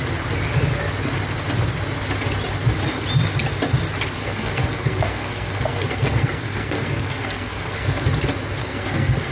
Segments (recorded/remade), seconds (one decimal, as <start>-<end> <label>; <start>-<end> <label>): 0.0-4.2 recorded; 4.2-8.1 remade; 8.1-8.6 recorded; 8.6-9.3 remade